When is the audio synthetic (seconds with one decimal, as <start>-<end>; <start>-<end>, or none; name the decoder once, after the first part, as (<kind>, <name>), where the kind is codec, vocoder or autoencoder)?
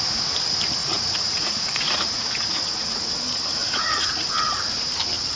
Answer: 0.8-3.0 (vocoder, Vocos); 3.6-4.6